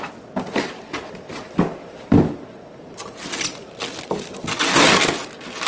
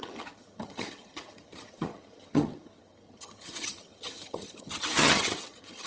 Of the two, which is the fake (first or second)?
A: second